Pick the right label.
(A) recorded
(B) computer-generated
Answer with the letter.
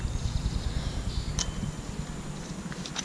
A